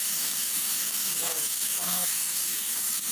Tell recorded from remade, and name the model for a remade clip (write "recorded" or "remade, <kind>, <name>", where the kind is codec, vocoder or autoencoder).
remade, codec, DAC